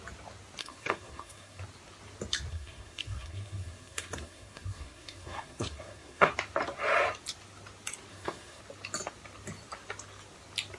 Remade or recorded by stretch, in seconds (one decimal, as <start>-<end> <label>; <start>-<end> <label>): 0.0-0.6 recorded; 0.6-1.6 remade; 1.6-2.5 recorded; 2.5-6.3 remade; 6.3-8.1 recorded; 8.1-8.6 remade; 8.6-10.8 recorded